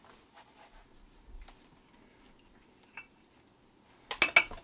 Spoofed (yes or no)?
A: no